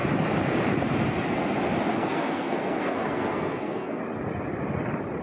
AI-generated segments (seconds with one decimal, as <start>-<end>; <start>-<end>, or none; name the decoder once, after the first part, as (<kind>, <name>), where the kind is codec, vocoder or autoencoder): 1.9-4.0 (codec, SNAC)